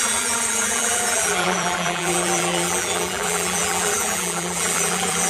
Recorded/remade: remade